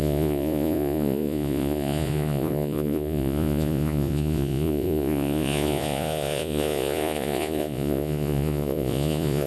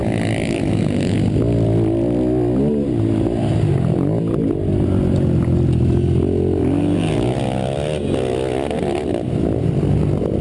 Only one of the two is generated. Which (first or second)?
first